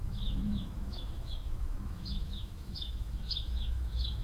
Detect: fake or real fake